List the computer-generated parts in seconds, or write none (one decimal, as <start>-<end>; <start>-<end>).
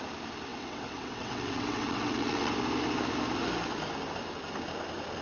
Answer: 0.5-2.5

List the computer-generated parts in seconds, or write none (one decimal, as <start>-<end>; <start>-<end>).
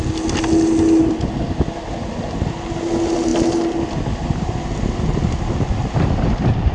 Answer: none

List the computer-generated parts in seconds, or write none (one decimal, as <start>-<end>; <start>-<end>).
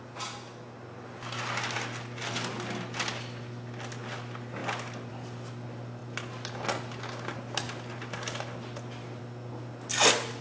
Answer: none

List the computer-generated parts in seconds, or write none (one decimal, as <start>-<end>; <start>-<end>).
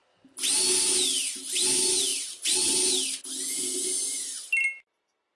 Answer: none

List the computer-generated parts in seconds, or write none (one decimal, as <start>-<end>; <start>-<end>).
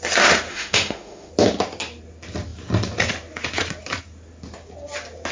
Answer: 0.5-1.3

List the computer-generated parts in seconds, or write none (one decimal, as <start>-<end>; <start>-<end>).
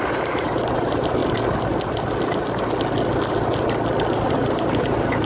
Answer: 0.0-1.2; 4.3-5.2